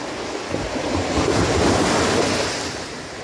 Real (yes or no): yes